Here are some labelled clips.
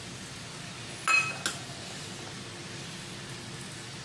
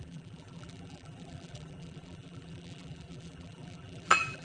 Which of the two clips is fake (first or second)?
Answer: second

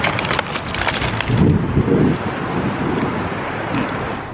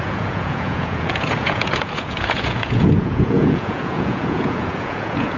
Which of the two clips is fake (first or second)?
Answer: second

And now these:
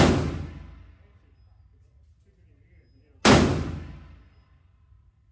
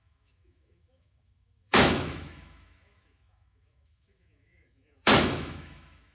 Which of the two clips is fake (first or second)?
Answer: second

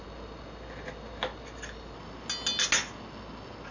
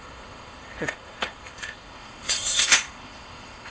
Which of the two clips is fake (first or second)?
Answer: second